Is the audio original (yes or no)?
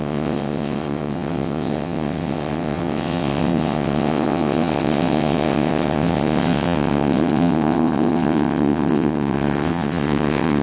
no